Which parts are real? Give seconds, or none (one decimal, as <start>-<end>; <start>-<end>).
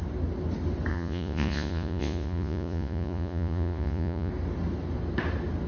0.0-0.9; 4.3-5.7